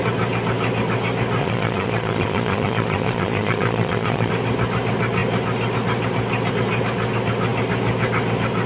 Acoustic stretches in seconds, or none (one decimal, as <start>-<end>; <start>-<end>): 0.0-1.4; 4.3-8.7